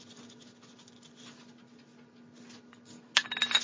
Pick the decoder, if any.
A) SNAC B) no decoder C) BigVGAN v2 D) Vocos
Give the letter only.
B